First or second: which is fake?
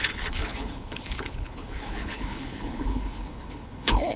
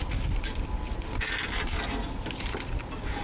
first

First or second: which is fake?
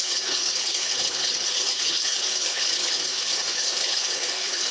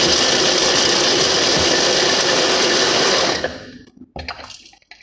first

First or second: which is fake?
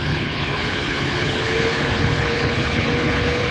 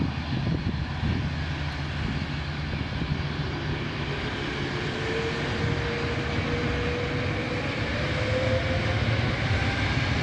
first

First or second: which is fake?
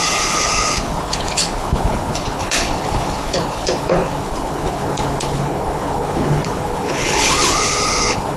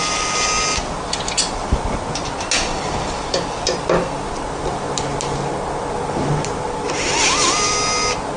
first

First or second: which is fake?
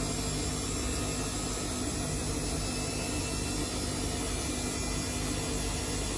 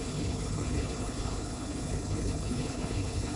second